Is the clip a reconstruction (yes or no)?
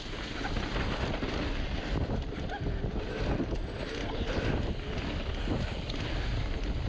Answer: no